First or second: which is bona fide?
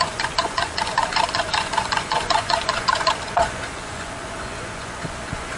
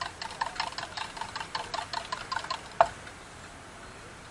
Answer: second